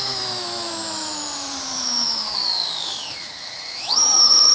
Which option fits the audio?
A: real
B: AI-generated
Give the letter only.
B